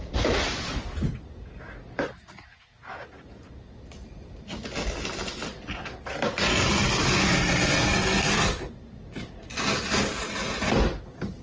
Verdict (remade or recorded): recorded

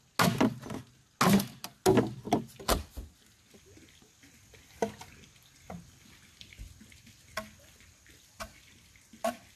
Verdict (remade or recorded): recorded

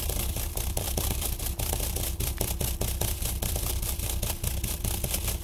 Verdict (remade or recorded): remade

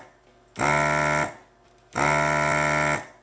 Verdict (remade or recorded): recorded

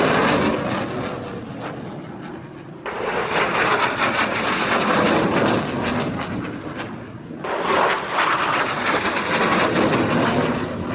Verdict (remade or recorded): recorded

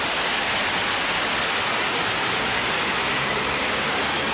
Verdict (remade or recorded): recorded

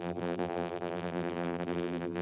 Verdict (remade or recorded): remade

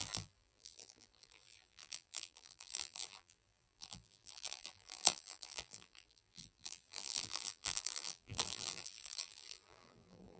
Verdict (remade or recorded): remade